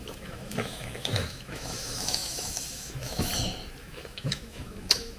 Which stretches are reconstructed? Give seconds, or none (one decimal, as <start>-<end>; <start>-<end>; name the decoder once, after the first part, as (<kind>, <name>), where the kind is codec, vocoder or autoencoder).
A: 0.0-3.3 (autoencoder, DAC-VAE); 3.8-5.2